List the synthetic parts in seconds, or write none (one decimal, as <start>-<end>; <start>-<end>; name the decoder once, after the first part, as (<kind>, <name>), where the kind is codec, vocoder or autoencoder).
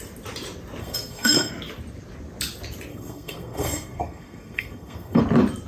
0.8-1.5 (codec, SNAC); 2.9-5.2